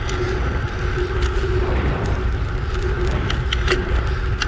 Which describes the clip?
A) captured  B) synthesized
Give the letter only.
A